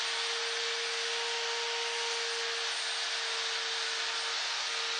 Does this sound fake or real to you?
real